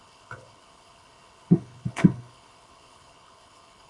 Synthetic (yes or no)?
yes